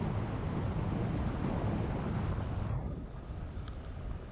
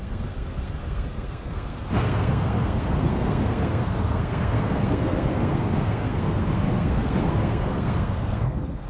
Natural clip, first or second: first